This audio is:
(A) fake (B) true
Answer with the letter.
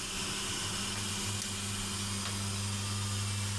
B